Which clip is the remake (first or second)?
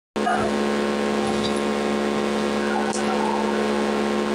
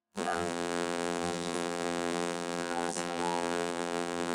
second